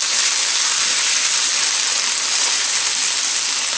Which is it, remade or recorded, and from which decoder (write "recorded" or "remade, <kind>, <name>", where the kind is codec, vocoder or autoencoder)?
recorded